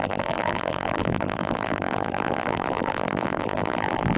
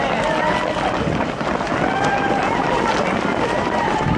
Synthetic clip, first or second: first